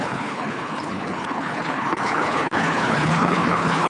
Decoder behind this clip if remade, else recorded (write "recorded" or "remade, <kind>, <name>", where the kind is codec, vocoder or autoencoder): remade, codec, HILCodec